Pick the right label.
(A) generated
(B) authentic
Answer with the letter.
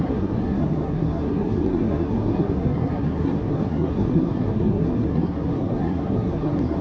A